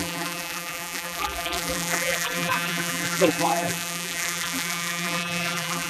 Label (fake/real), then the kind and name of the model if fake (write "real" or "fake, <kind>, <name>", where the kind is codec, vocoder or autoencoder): fake, vocoder, BigVGAN v2